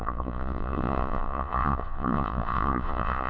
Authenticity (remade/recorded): remade